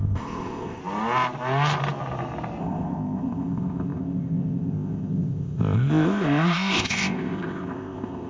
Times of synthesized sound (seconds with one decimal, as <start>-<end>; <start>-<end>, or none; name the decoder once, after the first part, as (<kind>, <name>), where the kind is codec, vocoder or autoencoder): 0.0-0.8 (codec, ZipCodec); 2.6-8.3